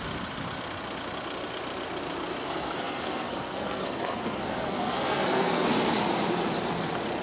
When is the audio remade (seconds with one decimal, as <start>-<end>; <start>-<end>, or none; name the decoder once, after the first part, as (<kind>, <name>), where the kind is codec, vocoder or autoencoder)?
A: 2.4-5.7 (codec, SNAC)